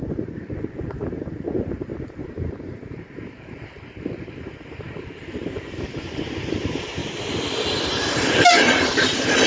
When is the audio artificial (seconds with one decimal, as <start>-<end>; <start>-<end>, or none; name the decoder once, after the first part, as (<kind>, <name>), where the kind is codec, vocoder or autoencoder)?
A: 0.0-7.0 (vocoder, BigVGAN v2); 8.1-9.5